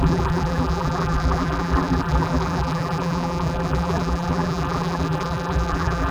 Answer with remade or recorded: remade